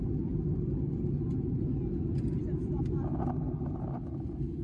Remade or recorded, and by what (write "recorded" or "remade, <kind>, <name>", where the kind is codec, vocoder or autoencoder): recorded